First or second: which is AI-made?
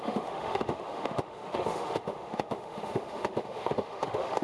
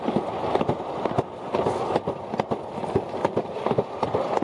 first